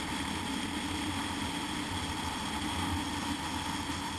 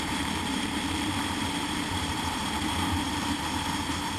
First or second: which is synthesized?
second